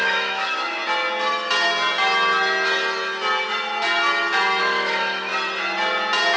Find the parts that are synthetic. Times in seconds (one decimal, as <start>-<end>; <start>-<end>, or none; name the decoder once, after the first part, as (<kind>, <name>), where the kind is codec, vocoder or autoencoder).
0.0-0.8 (autoencoder, DAC-VAE); 4.6-5.3